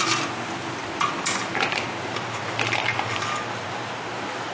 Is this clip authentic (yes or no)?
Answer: yes